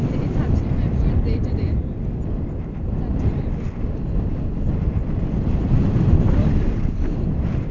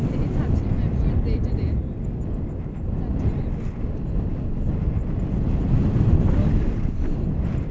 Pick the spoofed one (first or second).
first